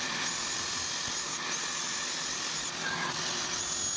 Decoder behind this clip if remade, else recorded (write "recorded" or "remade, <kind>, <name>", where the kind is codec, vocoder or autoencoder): recorded